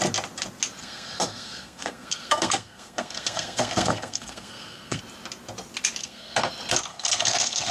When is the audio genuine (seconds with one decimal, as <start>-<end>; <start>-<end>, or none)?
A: 0.0-0.8; 5.0-6.0; 6.5-6.9